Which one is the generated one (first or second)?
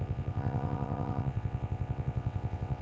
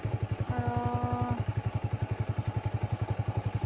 first